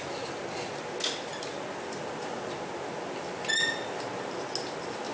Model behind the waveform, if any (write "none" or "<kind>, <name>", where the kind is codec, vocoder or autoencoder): none